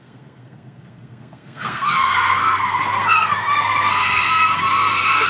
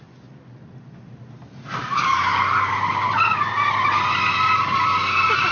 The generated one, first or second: first